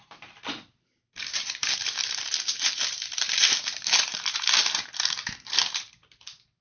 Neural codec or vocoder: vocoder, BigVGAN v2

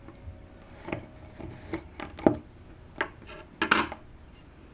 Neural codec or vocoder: none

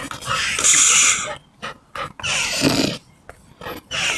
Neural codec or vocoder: none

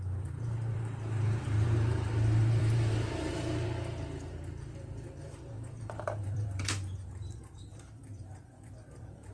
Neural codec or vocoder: vocoder, BigVGAN v2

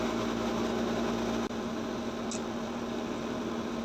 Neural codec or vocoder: none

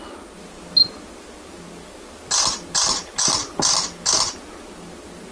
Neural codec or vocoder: none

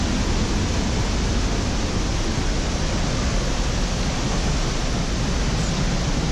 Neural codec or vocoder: none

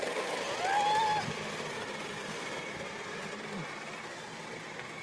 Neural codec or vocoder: none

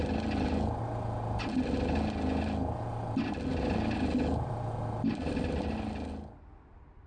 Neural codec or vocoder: none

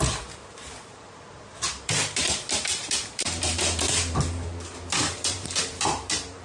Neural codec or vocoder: vocoder, BigVGAN v2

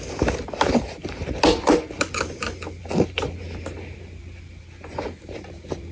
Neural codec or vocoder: none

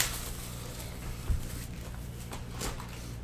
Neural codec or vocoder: none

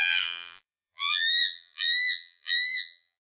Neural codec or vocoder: vocoder, BigVGAN v2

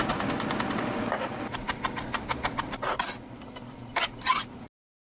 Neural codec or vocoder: none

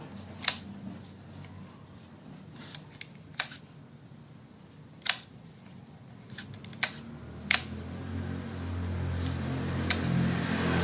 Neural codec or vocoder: none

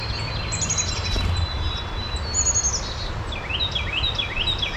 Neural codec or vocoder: none